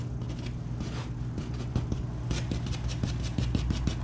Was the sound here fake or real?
real